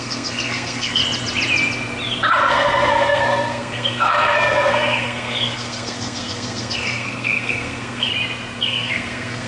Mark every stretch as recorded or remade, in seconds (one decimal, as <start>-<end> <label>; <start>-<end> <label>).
0.0-1.0 remade; 1.0-2.5 recorded; 2.5-8.1 remade; 8.1-8.6 recorded; 8.6-9.5 remade

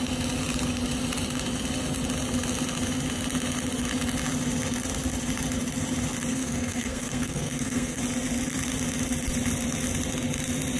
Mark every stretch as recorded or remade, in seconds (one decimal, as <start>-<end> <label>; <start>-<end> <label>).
0.0-6.3 recorded; 6.3-8.0 remade; 8.0-10.8 recorded

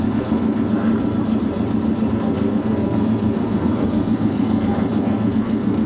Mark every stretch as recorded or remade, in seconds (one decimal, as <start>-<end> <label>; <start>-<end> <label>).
0.0-0.9 remade; 0.9-2.1 recorded; 2.1-5.9 remade

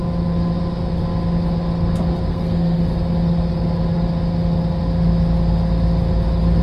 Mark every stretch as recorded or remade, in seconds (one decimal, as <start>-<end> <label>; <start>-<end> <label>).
0.0-2.3 recorded; 2.3-2.8 remade; 2.8-6.6 recorded

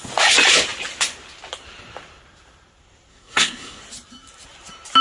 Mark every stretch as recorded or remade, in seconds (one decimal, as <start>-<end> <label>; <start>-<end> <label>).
0.0-3.1 recorded; 3.1-3.8 remade; 3.8-5.0 recorded

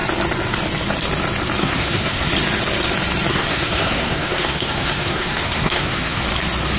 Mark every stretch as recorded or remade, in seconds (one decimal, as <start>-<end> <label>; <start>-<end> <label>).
0.0-1.6 recorded; 1.6-2.3 remade; 2.3-3.3 recorded; 3.3-6.2 remade; 6.2-6.8 recorded

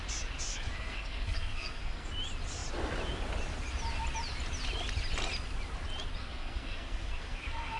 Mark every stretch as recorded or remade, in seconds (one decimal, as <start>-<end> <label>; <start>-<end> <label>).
0.0-0.5 recorded; 0.5-2.1 remade; 2.1-6.2 recorded; 6.2-7.8 remade